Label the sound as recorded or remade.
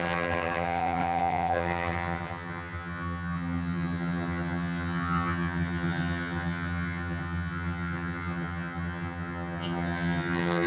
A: remade